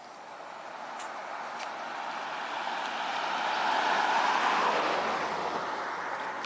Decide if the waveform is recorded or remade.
recorded